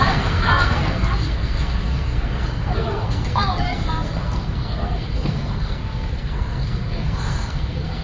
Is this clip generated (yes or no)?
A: yes